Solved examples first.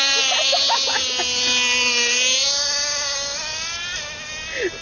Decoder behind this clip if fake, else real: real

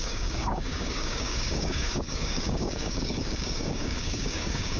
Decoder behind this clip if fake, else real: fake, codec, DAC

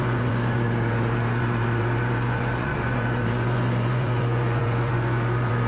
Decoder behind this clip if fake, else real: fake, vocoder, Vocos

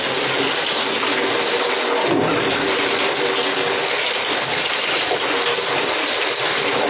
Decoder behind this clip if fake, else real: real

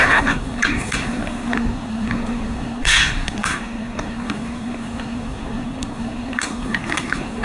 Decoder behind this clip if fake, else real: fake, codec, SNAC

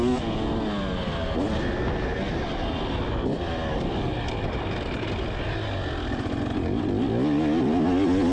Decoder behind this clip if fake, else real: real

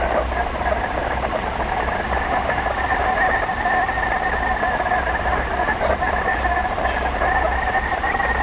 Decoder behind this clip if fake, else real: real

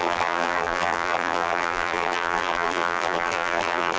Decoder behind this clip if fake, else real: fake, vocoder, BigVGAN v2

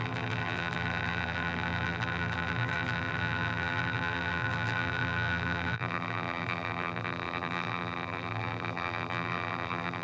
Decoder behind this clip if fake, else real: fake, vocoder, BigVGAN v2